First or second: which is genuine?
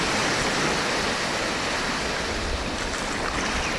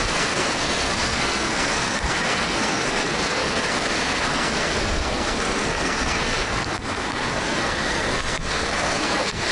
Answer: first